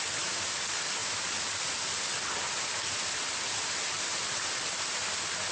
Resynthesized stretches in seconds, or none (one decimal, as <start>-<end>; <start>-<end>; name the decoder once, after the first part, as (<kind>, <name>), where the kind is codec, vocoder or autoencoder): none